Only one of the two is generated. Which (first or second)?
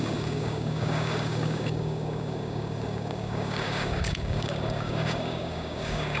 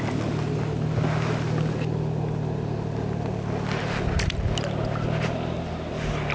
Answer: first